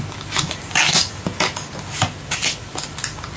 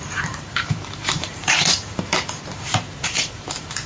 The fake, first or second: second